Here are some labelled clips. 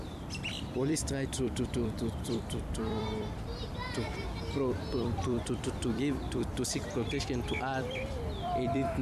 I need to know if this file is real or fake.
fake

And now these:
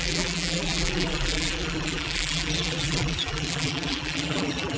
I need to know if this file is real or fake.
fake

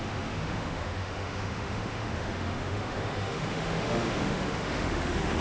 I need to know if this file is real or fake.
fake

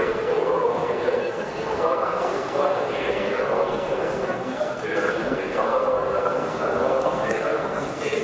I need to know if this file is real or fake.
fake